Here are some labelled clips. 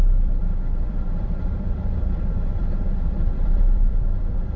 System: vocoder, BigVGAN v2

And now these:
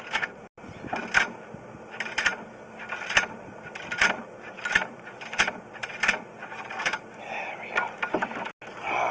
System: none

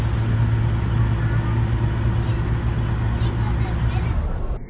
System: none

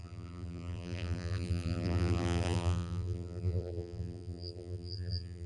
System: vocoder, BigVGAN v2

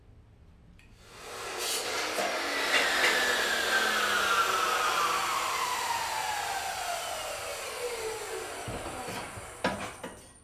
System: none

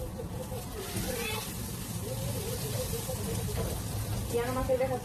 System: none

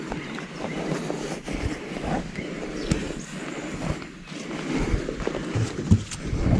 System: none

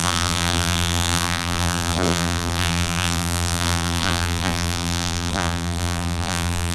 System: vocoder, BigVGAN v2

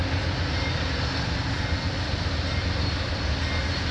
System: none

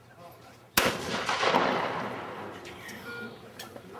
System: none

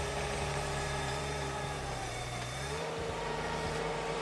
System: vocoder, BigVGAN v2